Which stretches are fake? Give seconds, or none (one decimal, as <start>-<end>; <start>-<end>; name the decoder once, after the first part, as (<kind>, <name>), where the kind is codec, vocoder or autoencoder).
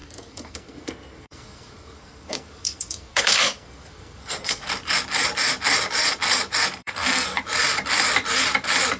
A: 0.0-4.7 (codec, SNAC); 6.8-7.4